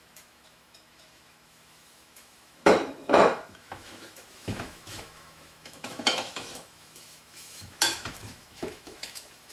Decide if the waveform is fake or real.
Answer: fake